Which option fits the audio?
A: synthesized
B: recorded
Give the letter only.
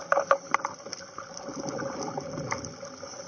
B